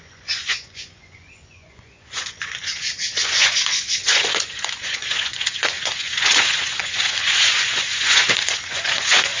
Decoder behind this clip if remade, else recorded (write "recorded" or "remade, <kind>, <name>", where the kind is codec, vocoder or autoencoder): remade, vocoder, Vocos